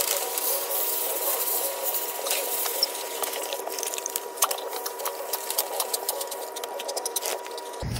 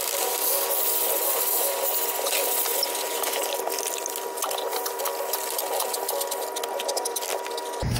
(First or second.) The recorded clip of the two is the second